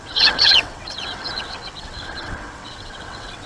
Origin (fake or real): fake